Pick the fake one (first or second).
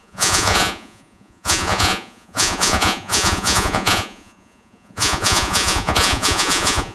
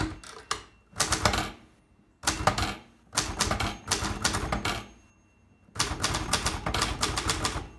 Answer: first